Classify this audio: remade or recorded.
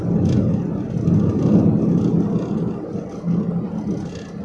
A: recorded